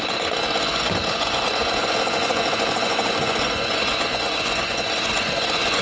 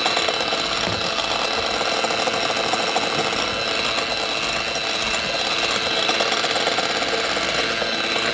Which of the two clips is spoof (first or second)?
first